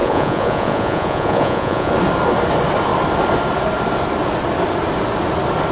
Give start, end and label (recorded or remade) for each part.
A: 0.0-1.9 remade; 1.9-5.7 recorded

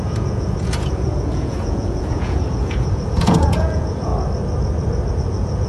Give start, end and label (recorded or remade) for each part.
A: 0.0-4.1 remade; 4.1-5.1 recorded; 5.1-5.7 remade